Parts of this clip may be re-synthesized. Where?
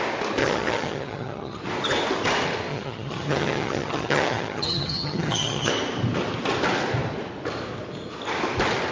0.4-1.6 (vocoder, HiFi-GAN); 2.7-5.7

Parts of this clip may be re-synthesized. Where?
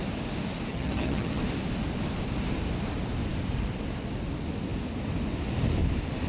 0.7-1.4 (vocoder, HiFi-GAN)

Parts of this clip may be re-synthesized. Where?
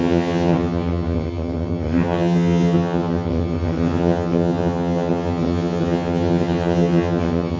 0.0-7.6 (vocoder, HiFi-GAN)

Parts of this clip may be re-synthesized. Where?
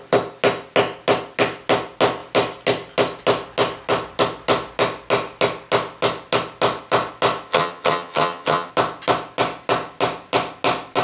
7.5-8.7 (vocoder, HiFi-GAN)